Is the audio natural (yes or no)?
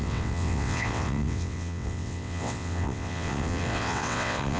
no